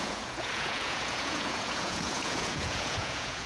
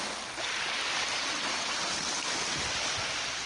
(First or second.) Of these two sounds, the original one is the second